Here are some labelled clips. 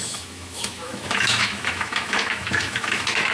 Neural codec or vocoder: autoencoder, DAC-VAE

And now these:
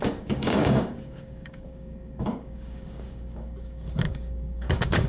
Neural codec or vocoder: codec, DAC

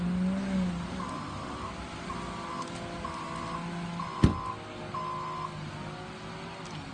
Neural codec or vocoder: none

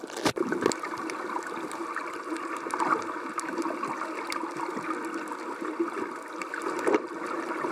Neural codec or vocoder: none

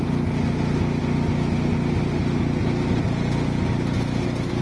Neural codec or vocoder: none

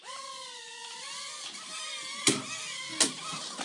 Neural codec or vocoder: none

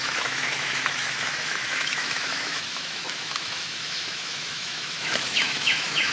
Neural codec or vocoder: autoencoder, DAC-VAE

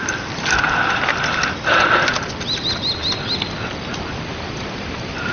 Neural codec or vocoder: none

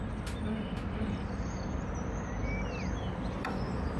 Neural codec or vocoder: vocoder, BigVGAN v2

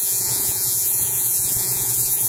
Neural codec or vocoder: vocoder, Vocos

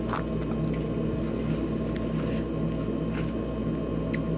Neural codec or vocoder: none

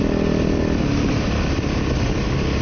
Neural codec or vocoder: none